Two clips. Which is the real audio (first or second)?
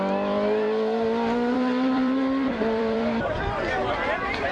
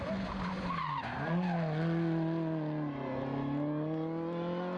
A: second